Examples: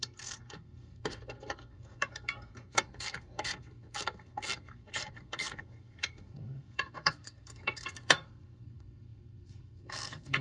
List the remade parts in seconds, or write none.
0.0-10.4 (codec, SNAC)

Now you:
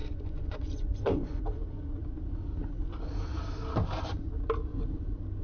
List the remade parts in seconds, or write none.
0.0-2.0 (vocoder, Vocos)